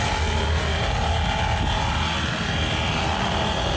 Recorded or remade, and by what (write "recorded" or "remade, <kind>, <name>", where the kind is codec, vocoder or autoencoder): recorded